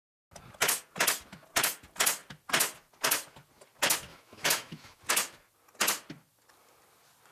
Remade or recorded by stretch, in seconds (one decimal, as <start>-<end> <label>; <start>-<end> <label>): 0.0-4.1 recorded; 4.1-5.0 remade; 5.0-7.3 recorded